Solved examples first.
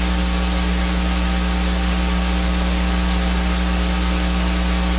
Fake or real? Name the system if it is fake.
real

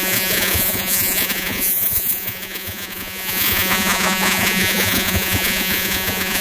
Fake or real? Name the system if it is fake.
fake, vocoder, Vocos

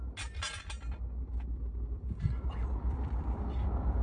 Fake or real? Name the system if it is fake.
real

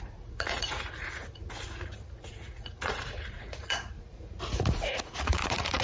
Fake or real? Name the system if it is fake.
fake, vocoder, Vocos